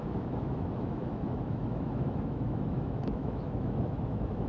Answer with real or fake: fake